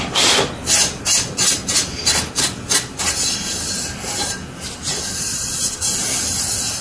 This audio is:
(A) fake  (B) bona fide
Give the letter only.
B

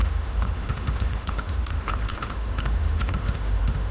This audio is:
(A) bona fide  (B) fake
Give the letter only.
B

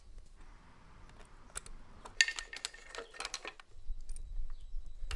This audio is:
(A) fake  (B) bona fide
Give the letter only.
B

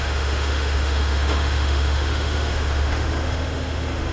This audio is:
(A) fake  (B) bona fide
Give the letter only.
A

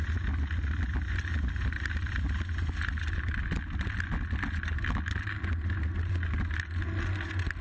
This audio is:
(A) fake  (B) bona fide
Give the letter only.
B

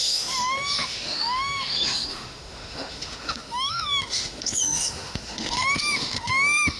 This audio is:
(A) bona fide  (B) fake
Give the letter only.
B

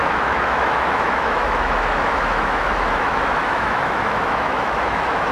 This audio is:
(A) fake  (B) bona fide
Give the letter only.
A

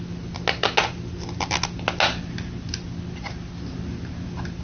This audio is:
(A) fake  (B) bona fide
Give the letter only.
B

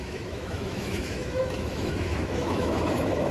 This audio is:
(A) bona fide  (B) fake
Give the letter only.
B